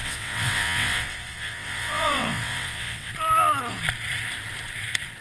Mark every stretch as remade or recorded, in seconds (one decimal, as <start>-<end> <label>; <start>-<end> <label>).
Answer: 0.0-3.1 remade; 3.1-5.2 recorded